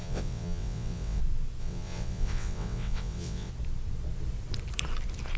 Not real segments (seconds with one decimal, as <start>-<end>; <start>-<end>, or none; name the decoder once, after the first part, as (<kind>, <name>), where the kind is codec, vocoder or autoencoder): 0.0-1.2 (vocoder, WaveNeXt); 1.6-3.5